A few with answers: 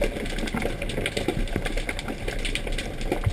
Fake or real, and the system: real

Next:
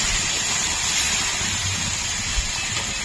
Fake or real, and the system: real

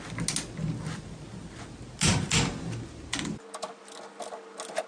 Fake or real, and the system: real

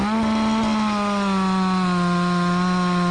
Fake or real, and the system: real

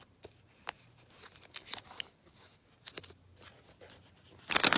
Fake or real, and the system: real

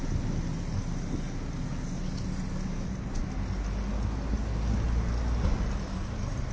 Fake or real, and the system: real